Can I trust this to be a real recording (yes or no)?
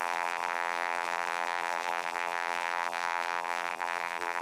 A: no